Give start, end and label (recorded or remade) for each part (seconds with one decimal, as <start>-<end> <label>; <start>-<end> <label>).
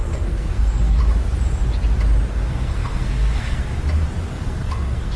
0.0-1.0 remade; 1.0-2.3 recorded; 2.3-3.7 remade; 3.7-4.3 recorded; 4.3-5.2 remade